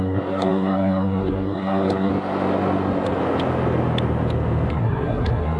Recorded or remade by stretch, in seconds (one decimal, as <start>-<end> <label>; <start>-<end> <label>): 0.0-2.1 remade; 2.1-4.7 recorded; 4.7-5.6 remade